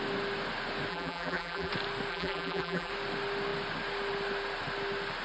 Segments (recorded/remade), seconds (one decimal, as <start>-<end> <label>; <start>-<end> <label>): 0.0-0.9 recorded; 0.9-1.7 remade; 1.7-2.1 recorded; 2.1-2.9 remade; 2.9-5.2 recorded

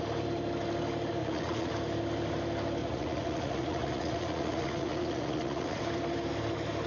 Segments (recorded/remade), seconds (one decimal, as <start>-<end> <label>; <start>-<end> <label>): 0.0-1.2 recorded; 1.2-1.7 remade; 1.7-2.8 recorded; 2.8-5.8 remade; 5.8-6.9 recorded

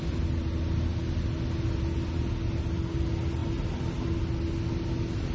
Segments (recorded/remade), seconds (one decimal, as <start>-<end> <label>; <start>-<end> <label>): 0.0-5.3 recorded

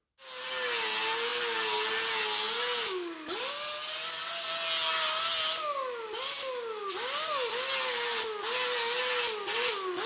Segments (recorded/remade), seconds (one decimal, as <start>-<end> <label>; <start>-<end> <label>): 0.0-10.1 recorded

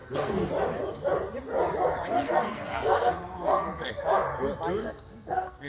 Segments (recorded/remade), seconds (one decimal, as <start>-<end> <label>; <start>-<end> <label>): 0.0-0.5 remade; 0.5-2.2 recorded; 2.2-3.9 remade; 3.9-4.8 recorded; 4.8-5.7 remade

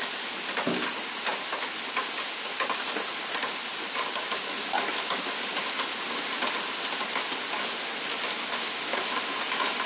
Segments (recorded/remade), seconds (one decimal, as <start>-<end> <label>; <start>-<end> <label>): 0.0-9.9 recorded